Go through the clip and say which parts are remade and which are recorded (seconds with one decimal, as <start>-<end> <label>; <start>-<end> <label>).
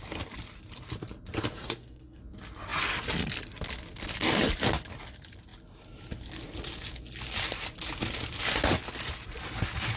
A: 0.0-1.6 recorded; 1.6-2.2 remade; 2.2-10.0 recorded